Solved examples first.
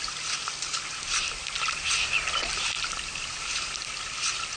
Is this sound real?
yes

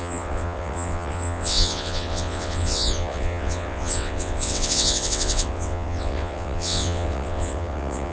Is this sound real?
no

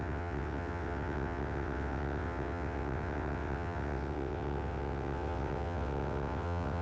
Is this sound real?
no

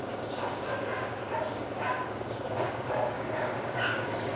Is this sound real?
no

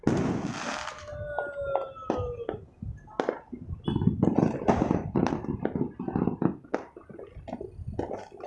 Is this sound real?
yes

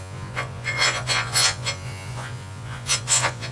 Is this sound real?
no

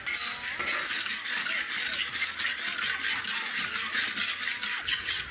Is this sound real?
yes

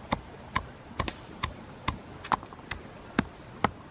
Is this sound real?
yes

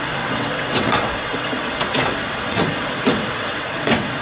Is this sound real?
no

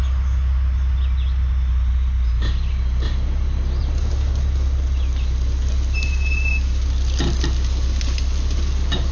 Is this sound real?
yes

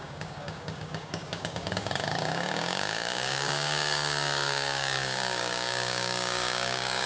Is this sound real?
no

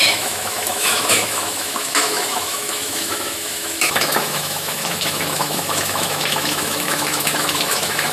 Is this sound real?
no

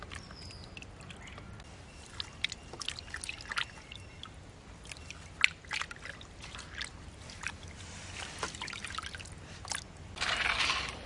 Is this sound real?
yes